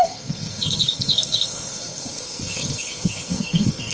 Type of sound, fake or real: fake